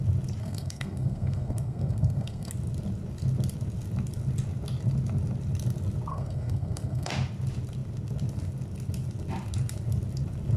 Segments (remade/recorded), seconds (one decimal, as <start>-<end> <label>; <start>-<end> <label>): 0.0-0.4 recorded; 0.4-2.5 remade; 2.5-6.1 recorded; 6.1-7.1 remade; 7.1-10.6 recorded